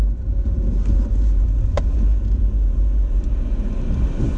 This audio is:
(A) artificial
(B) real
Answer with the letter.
B